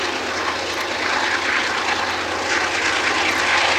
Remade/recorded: recorded